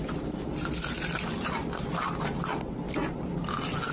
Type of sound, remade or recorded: recorded